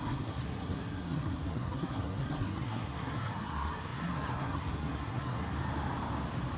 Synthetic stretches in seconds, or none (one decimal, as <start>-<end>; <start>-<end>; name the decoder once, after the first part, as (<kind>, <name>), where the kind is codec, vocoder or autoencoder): 0.0-5.5 (codec, SNAC)